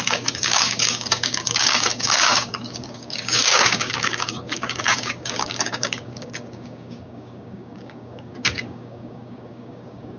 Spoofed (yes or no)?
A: yes